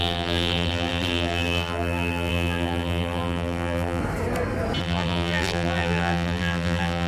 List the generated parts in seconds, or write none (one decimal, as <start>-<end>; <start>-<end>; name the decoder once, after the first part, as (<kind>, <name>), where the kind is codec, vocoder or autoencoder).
0.0-4.0 (vocoder, BigVGAN v2); 4.8-7.1